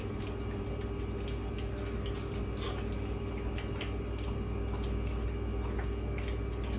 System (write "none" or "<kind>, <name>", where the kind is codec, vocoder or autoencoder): none